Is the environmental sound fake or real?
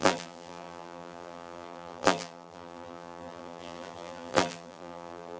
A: fake